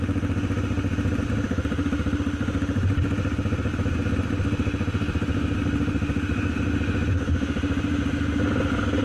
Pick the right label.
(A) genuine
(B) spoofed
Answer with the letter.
A